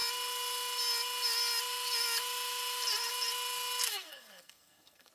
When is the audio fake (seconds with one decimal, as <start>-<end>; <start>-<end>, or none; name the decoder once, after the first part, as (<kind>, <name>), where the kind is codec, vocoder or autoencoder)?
3.9-5.1 (codec, SNAC)